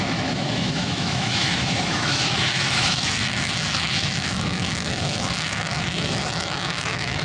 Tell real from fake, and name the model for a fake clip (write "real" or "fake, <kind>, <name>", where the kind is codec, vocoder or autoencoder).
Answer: fake, autoencoder, DAC-VAE